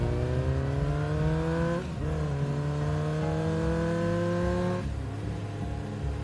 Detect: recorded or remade recorded